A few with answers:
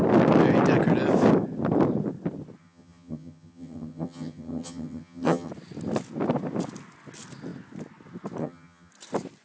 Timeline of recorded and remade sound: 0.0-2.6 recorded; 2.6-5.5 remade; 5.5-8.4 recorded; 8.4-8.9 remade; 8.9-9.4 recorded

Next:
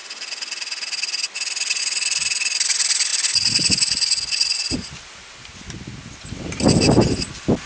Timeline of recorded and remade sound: 0.0-7.7 recorded